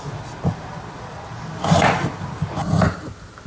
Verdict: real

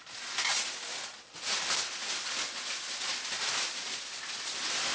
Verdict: real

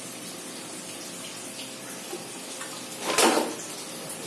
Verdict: real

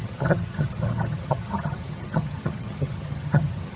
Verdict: fake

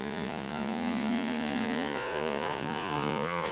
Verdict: fake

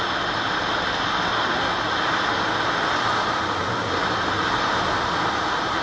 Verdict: real